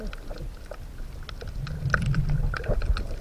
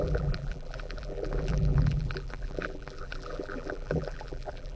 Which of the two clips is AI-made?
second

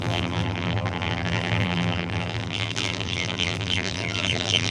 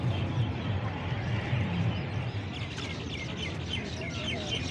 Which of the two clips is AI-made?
first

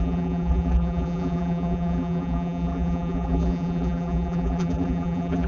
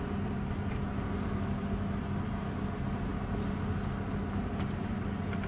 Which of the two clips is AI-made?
first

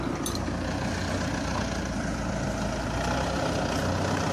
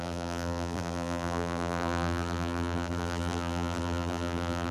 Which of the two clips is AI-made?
second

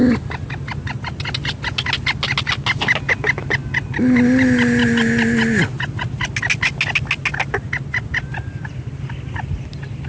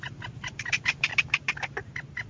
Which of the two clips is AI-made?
second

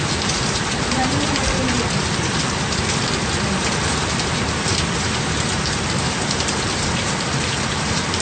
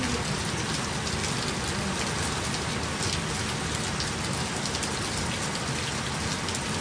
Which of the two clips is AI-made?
first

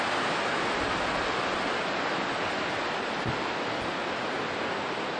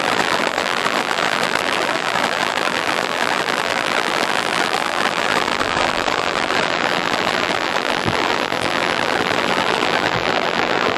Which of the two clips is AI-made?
second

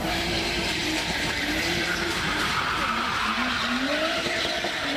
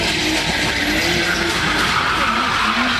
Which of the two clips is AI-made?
first